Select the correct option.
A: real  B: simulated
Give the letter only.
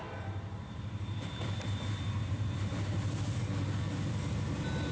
B